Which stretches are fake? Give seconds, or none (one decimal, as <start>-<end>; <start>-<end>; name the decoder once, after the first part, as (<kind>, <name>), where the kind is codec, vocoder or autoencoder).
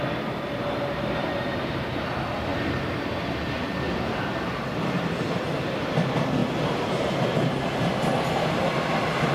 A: 2.5-3.5 (vocoder, BigVGAN v2)